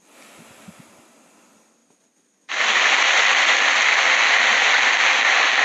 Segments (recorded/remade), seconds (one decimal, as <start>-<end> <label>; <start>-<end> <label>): 0.0-5.6 recorded